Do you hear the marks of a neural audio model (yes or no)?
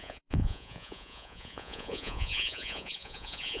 yes